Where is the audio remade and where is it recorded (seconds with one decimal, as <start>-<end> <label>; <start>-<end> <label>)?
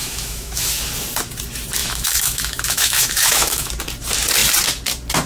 0.0-0.8 remade; 0.8-1.8 recorded; 1.8-3.7 remade; 3.7-5.3 recorded